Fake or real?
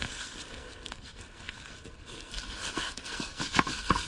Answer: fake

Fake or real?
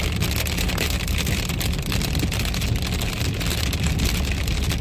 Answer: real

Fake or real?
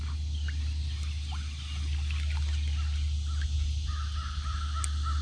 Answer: real